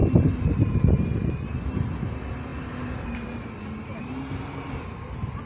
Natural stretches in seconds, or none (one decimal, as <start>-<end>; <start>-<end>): 1.1-2.5; 4.7-5.5